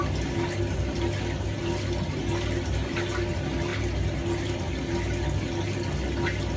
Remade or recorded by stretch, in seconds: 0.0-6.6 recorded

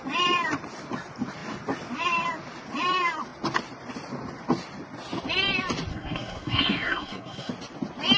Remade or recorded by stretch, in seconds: 0.0-5.9 recorded; 5.9-7.5 remade; 7.5-8.2 recorded

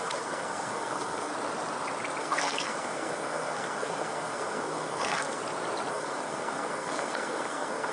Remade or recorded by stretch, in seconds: 0.0-1.3 remade; 1.3-2.2 recorded; 2.2-5.4 remade; 5.4-5.9 recorded; 5.9-7.9 remade